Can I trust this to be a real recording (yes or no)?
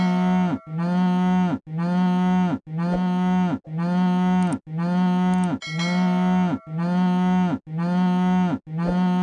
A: yes